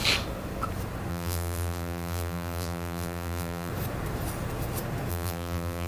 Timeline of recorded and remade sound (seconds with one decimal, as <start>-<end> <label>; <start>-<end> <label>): 0.0-1.1 recorded; 1.1-3.7 remade; 3.7-5.1 recorded; 5.1-5.9 remade